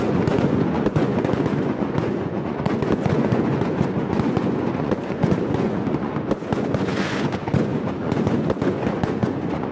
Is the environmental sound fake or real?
fake